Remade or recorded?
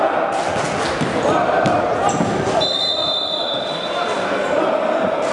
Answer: recorded